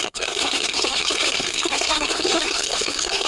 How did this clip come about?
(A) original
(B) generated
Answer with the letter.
B